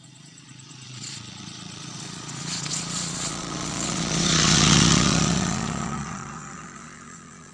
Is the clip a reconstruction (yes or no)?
yes